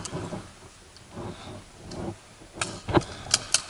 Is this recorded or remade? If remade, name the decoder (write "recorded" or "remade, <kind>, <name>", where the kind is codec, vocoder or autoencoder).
recorded